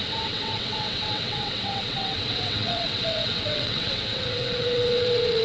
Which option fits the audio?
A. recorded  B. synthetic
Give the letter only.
B